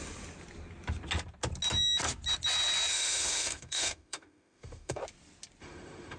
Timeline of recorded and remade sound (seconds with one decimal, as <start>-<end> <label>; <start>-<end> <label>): 0.0-2.9 recorded; 2.9-5.0 remade; 5.0-5.6 recorded; 5.6-6.2 remade